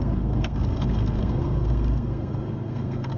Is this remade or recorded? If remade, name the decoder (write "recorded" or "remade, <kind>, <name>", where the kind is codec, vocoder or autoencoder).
remade, codec, SNAC